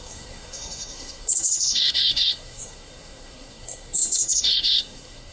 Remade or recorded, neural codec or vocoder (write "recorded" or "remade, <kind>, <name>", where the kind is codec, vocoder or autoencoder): remade, codec, SNAC